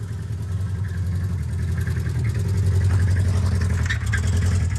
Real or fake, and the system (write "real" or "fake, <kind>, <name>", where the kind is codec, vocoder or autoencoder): real